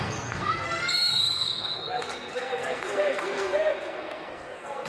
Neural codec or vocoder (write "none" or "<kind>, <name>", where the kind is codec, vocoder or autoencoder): codec, SNAC